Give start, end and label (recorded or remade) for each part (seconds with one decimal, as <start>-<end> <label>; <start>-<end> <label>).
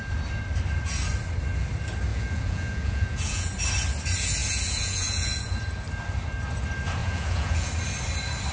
0.0-2.1 recorded; 2.1-3.5 remade; 3.5-4.4 recorded; 4.4-5.6 remade; 5.6-7.0 recorded; 7.0-7.7 remade; 7.7-8.5 recorded